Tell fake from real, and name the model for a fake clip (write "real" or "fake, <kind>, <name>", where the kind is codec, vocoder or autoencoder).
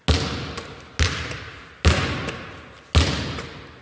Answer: real